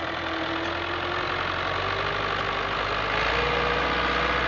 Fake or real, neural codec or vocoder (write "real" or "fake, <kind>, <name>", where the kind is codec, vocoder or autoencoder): real